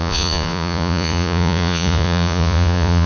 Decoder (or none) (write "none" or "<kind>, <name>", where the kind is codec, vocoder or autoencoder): vocoder, Vocos